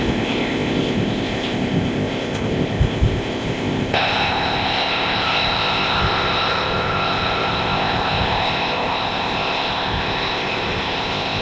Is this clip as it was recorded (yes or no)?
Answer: no